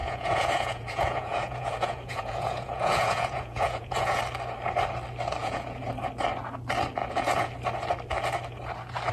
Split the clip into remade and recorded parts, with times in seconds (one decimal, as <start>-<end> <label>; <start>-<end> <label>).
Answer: 0.0-4.2 remade; 4.2-5.4 recorded; 5.4-5.9 remade; 5.9-7.0 recorded; 7.0-7.5 remade; 7.5-9.1 recorded